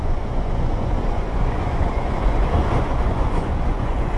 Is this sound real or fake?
fake